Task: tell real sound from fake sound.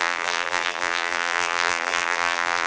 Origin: fake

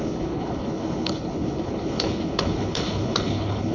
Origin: fake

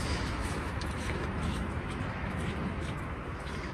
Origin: fake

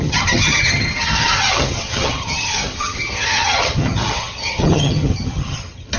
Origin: fake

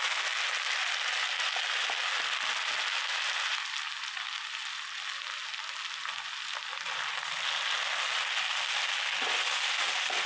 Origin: real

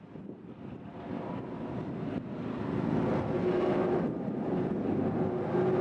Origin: real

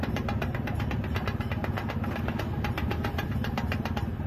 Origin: real